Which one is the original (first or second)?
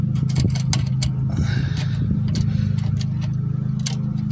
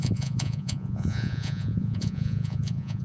first